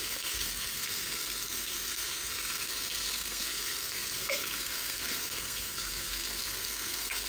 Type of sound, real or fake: fake